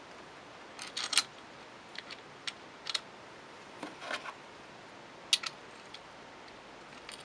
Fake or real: real